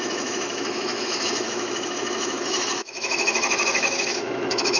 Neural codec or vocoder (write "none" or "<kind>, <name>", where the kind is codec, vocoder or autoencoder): autoencoder, DAC-VAE